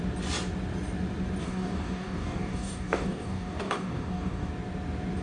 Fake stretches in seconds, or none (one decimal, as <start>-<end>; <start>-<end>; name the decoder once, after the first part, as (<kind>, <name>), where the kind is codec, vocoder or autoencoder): 1.4-4.5 (codec, DAC)